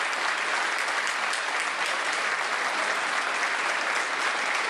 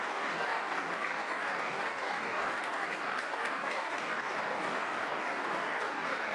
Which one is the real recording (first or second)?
first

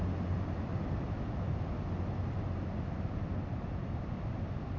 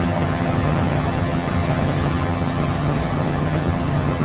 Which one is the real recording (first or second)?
first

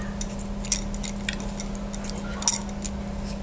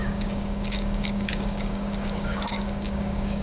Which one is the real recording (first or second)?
first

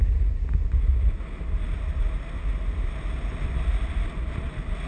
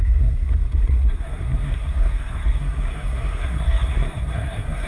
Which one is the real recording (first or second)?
first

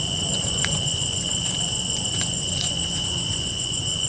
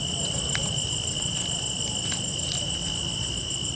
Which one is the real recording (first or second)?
second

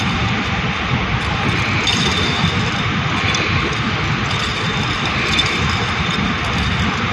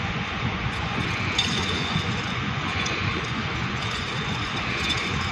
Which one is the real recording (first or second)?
first